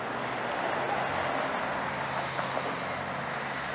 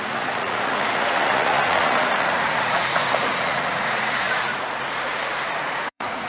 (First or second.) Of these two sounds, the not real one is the second